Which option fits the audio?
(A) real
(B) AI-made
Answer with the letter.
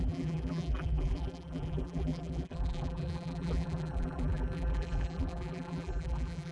B